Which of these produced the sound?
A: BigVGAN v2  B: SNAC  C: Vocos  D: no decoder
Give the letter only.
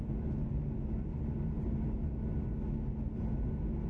D